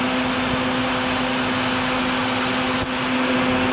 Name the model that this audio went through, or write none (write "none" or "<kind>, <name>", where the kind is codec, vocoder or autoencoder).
none